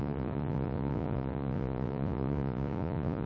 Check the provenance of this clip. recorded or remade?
remade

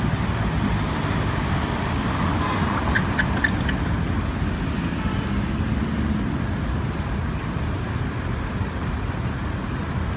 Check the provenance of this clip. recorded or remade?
recorded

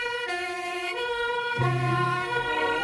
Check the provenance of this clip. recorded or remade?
remade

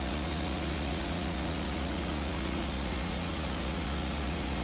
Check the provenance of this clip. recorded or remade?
remade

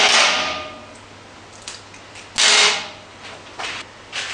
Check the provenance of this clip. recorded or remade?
recorded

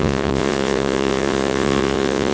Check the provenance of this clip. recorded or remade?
remade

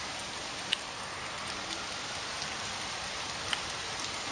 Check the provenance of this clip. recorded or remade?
recorded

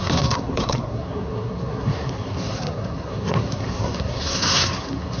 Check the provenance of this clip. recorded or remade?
remade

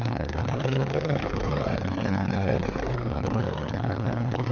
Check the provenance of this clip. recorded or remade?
remade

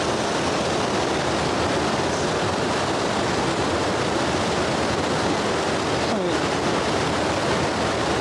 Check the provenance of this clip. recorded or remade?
recorded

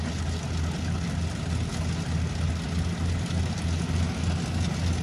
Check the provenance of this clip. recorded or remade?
recorded